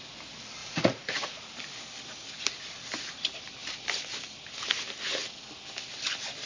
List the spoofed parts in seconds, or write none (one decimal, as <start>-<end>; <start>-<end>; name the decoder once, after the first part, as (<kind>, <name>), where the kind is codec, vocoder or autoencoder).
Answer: 0.6-1.5 (vocoder, Vocos)